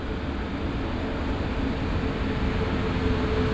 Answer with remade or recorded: recorded